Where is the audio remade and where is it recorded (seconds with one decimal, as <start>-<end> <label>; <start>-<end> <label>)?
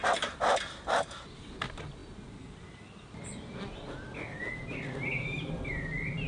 0.0-6.3 recorded